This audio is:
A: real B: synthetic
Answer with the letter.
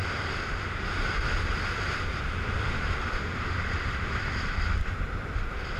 A